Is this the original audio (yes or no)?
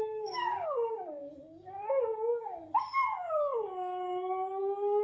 no